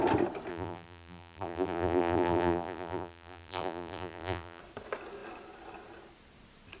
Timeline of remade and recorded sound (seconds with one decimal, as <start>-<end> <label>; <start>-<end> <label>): 0.0-0.5 recorded; 0.5-4.6 remade; 4.6-6.8 recorded